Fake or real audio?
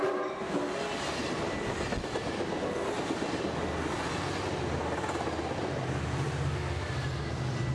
real